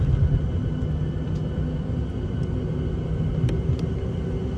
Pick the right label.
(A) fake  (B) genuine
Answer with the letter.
B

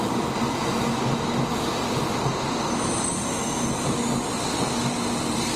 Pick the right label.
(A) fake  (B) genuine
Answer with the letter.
B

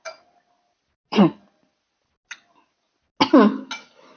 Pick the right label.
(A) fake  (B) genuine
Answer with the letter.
B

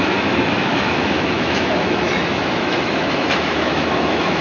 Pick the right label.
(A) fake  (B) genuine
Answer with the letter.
A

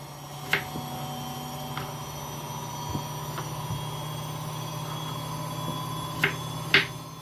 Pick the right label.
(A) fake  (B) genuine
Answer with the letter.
B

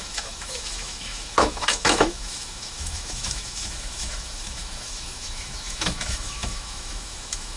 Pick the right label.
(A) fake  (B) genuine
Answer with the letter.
A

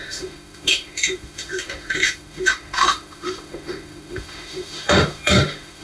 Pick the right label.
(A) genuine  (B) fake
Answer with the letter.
B